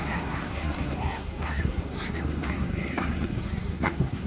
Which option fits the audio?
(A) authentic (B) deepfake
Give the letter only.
B